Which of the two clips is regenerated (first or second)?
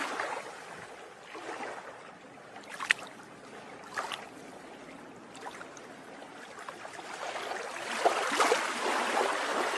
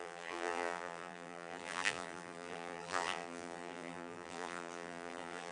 second